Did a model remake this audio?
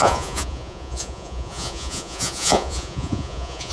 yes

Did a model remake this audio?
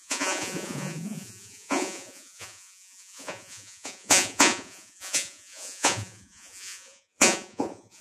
yes